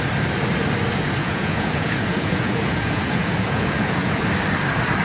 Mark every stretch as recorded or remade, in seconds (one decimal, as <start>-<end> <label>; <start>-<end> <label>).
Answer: 0.0-1.2 recorded; 1.2-4.2 remade; 4.2-5.0 recorded